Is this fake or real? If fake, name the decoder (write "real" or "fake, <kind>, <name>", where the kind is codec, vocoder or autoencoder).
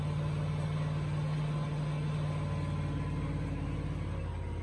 real